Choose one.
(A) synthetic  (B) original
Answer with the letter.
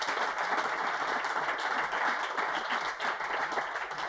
B